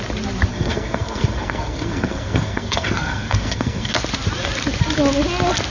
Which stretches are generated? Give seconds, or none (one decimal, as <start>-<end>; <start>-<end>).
0.5-3.9

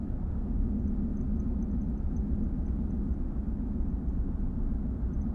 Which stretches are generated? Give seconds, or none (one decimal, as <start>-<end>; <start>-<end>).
none